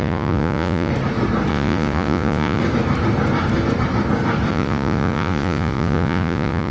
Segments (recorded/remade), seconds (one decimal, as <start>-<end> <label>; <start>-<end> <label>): 0.0-0.9 remade; 0.9-1.5 recorded; 1.5-2.6 remade; 2.6-4.5 recorded; 4.5-6.7 remade